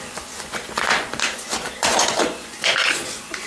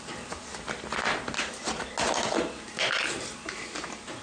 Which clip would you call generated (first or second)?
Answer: first